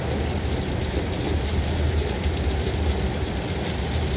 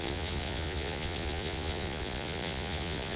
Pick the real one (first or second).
first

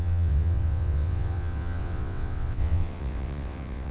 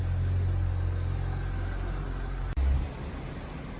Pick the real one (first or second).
second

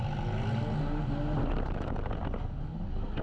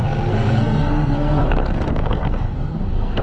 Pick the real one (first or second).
first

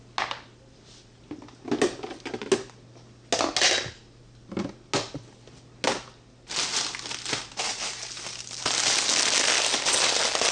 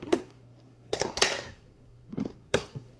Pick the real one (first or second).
first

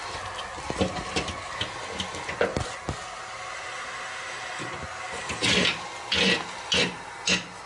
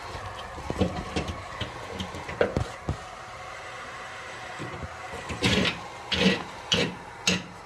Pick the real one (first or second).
first